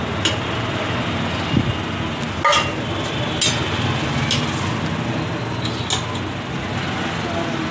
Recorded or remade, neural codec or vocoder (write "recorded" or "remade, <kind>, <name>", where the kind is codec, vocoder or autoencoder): recorded